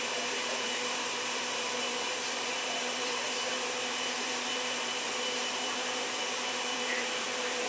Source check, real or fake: fake